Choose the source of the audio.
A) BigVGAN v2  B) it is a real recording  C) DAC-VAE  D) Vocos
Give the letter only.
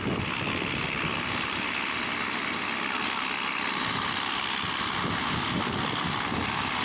B